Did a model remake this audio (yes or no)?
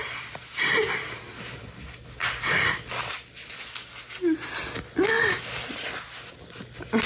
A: no